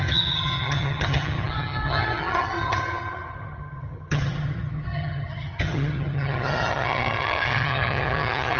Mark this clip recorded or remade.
remade